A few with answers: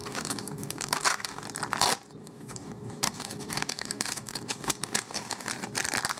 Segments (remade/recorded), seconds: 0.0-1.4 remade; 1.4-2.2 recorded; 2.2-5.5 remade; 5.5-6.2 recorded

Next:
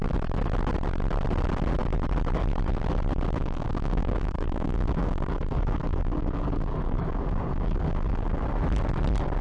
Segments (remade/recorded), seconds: 0.0-3.4 recorded; 3.4-8.4 remade; 8.4-9.4 recorded

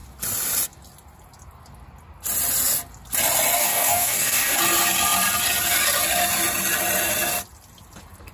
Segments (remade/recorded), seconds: 0.0-3.6 recorded; 3.6-4.6 remade; 4.6-8.3 recorded

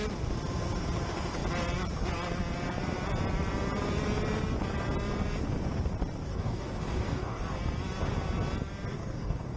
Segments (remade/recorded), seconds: 0.0-6.3 recorded; 6.3-7.4 remade; 7.4-8.9 recorded; 8.9-9.6 remade

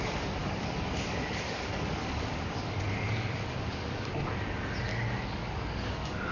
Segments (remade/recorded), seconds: 0.0-0.4 recorded; 0.4-4.1 remade; 4.1-4.9 recorded; 4.9-6.3 remade

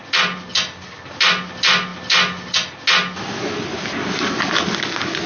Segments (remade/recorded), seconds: 0.0-5.3 recorded

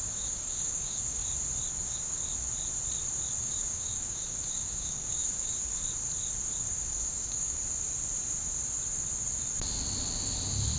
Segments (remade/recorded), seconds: 0.0-1.2 remade; 1.2-1.7 recorded; 1.7-2.2 remade; 2.2-3.4 recorded; 3.4-5.8 remade; 5.8-6.6 recorded; 6.6-7.6 remade; 7.6-10.8 recorded

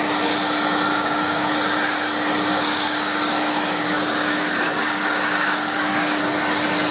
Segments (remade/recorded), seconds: 0.0-0.9 recorded; 0.9-1.5 remade; 1.5-2.5 recorded; 2.5-6.2 remade; 6.2-6.9 recorded